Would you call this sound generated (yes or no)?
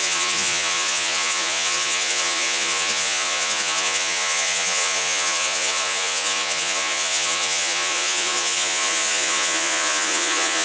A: yes